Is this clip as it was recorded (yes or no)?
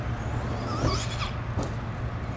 yes